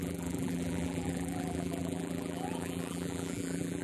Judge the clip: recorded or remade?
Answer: remade